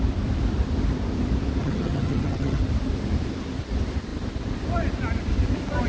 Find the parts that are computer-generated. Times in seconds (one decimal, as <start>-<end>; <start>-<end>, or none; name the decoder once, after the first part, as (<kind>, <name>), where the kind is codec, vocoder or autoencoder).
1.6-2.6 (vocoder, HiFi-GAN)